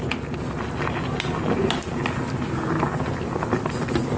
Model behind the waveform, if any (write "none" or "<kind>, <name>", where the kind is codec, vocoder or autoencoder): none